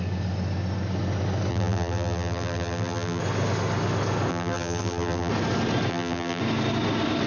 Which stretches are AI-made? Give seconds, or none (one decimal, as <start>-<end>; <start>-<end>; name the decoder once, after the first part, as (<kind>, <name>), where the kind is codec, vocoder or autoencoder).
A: 1.5-3.2 (vocoder, BigVGAN v2); 4.3-5.3; 5.9-6.4